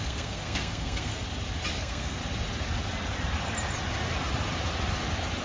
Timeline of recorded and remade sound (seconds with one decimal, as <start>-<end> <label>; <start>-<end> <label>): 0.0-1.1 remade; 1.1-1.8 recorded; 1.8-2.2 remade; 2.2-5.4 recorded